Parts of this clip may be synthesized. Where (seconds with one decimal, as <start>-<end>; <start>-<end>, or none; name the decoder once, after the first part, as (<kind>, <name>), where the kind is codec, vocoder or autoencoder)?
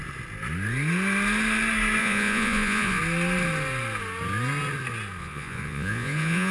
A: 2.0-3.0 (vocoder, Vocos); 5.2-6.5